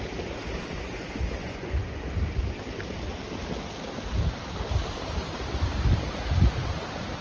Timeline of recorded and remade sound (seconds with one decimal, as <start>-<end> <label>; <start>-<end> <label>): 0.0-1.4 recorded; 1.4-2.0 remade; 2.0-7.2 recorded